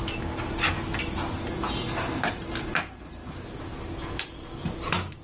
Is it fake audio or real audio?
real